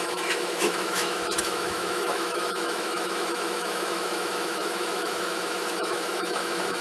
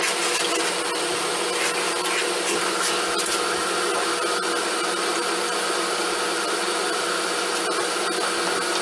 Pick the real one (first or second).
second